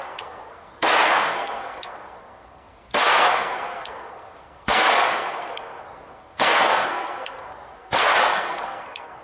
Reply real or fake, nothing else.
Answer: fake